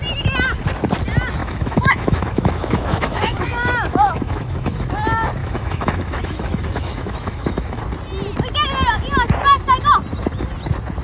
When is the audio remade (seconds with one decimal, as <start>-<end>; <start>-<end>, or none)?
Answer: 1.4-4.9; 5.4-7.8